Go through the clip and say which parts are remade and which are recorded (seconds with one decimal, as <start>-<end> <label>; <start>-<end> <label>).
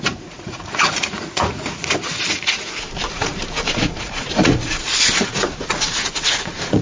0.0-2.5 remade; 2.5-3.1 recorded; 3.1-6.8 remade